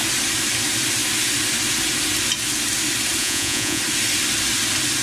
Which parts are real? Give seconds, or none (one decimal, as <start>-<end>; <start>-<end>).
0.0-3.2; 3.8-5.0